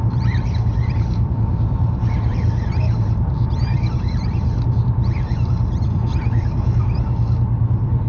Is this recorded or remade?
remade